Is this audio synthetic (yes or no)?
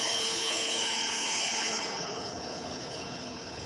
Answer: yes